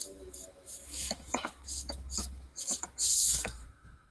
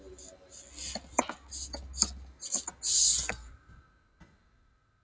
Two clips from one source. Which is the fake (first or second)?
first